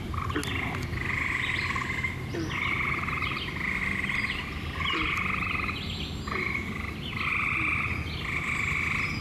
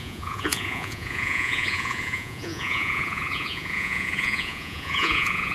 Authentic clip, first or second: first